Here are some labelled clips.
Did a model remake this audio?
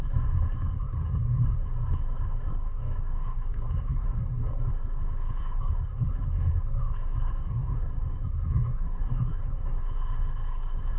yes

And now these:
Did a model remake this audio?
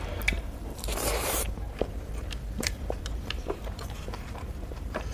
yes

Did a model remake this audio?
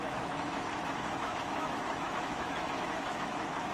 yes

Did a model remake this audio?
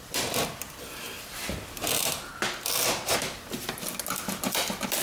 no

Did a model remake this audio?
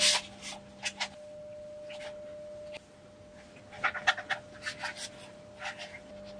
no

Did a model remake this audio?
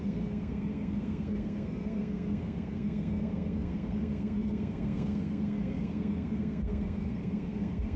yes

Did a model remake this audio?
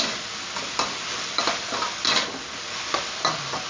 no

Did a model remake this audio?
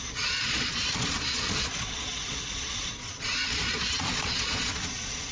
yes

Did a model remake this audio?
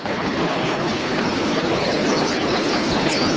yes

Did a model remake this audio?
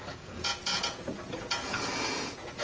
yes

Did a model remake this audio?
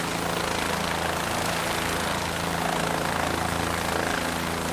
no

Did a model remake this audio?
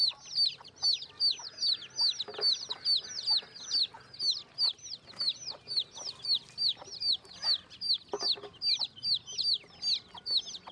no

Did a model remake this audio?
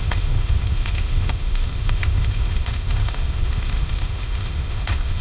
yes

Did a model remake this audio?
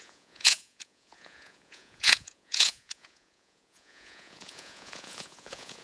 yes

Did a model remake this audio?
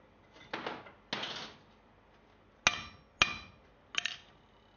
no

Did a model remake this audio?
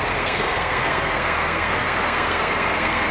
yes